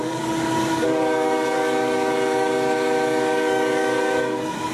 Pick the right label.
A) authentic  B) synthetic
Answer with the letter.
B